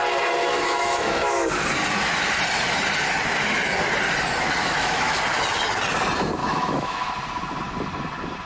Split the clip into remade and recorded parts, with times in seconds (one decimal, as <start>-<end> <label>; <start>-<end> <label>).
0.0-0.4 recorded; 0.4-1.5 remade; 1.5-4.6 recorded; 4.6-5.2 remade; 5.2-6.4 recorded; 6.4-7.1 remade; 7.1-8.5 recorded